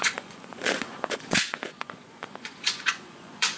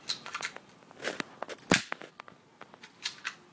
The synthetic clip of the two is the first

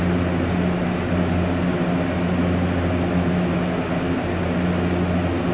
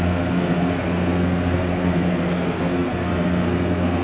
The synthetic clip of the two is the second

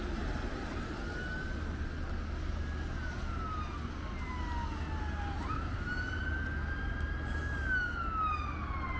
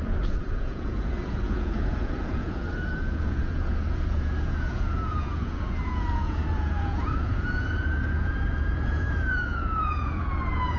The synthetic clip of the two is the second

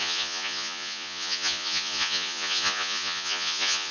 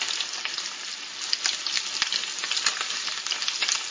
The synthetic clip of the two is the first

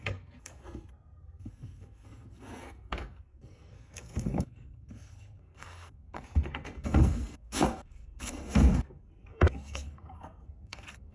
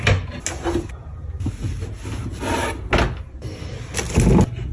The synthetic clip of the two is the first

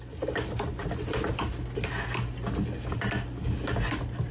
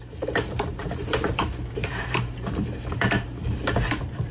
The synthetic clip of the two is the second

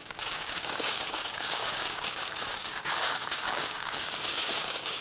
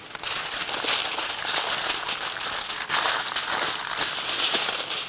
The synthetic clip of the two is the first